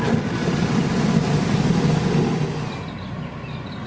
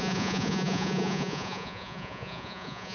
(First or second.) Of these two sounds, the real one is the first